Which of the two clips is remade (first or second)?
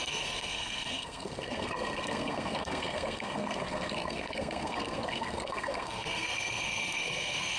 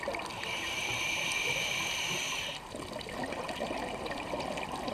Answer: first